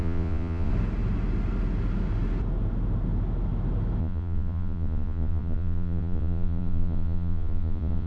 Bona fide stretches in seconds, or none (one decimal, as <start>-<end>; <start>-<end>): 0.7-4.0